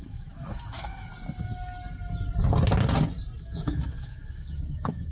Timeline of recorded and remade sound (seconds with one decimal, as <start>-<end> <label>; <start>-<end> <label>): 0.0-1.1 remade; 1.1-3.4 recorded; 3.4-5.1 remade